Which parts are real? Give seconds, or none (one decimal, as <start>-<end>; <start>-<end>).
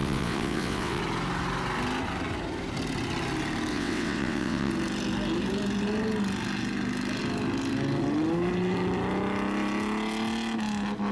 1.0-3.7; 4.7-11.1